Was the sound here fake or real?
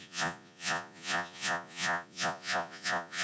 fake